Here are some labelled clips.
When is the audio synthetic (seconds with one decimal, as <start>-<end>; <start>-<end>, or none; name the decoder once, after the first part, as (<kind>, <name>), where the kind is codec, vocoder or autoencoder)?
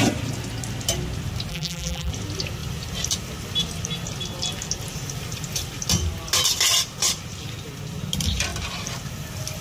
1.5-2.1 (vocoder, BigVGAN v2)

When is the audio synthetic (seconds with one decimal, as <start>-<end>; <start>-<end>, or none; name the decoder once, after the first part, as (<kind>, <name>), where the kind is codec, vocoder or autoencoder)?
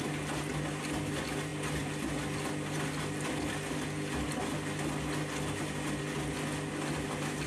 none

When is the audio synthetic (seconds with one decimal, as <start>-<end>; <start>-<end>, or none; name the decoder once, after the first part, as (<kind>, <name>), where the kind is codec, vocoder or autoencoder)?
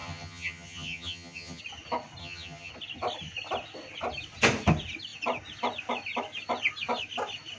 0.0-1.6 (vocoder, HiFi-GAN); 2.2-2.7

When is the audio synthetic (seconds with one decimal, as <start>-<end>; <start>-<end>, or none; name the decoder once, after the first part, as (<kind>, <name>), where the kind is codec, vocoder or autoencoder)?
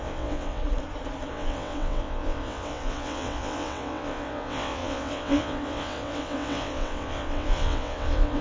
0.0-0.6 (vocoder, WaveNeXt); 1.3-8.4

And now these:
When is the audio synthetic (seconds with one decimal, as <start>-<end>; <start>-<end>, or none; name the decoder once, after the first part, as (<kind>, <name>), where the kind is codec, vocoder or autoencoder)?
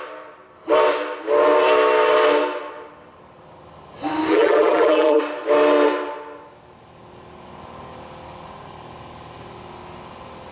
4.3-5.2 (vocoder, BigVGAN v2)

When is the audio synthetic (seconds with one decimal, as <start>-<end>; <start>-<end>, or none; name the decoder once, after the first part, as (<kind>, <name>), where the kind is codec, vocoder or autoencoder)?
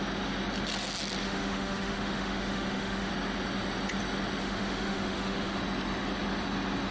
1.2-3.1 (autoencoder, DAC-VAE); 4.4-5.6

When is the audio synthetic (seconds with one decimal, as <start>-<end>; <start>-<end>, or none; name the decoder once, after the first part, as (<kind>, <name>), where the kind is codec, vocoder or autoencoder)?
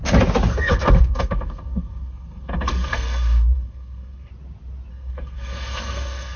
0.5-4.3 (codec, SNAC); 4.9-6.4